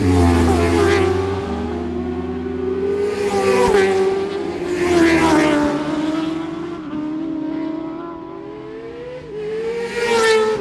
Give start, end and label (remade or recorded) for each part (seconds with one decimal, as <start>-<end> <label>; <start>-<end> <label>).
0.0-10.6 recorded